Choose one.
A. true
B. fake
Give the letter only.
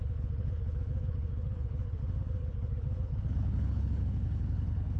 B